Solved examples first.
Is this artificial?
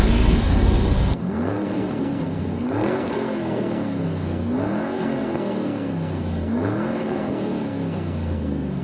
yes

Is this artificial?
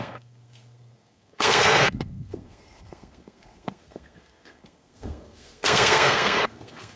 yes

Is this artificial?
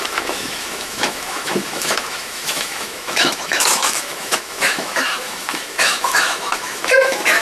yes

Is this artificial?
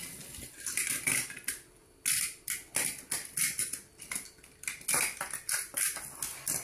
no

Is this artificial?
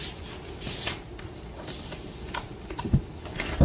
no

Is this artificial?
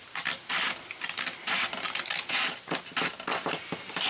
no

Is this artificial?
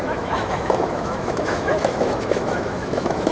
yes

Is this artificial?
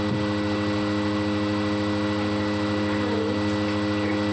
no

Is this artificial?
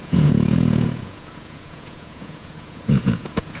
yes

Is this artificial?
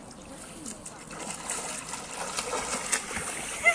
no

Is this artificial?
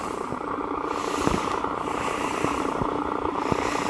yes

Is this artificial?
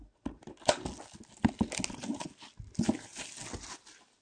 no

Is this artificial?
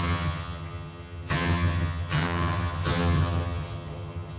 yes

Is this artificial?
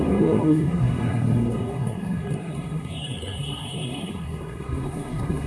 yes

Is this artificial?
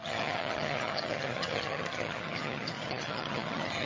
yes